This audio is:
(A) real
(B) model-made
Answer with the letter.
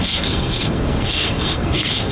B